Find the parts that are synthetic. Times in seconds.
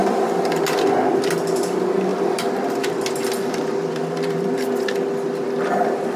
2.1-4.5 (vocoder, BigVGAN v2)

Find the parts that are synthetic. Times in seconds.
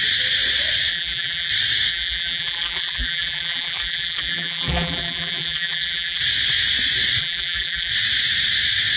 0.9-1.5 (vocoder, BigVGAN v2); 1.9-6.2; 7.2-7.9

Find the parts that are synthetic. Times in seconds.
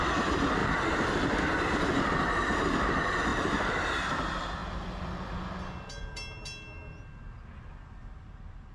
3.3-3.8 (vocoder, BigVGAN v2)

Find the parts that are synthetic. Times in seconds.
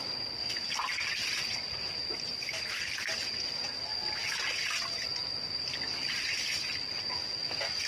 none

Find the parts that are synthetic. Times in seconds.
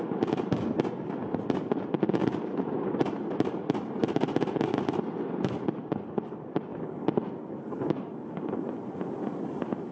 2.2-3.0 (vocoder, BigVGAN v2); 6.7-7.9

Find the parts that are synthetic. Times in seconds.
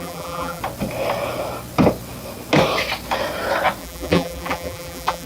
0.0-0.6 (vocoder, BigVGAN v2); 3.8-5.3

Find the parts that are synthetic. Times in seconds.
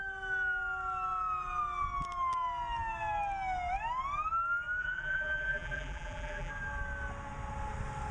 4.8-6.5 (vocoder, BigVGAN v2)